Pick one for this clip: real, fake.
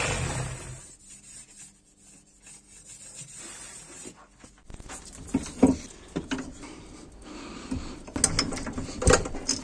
real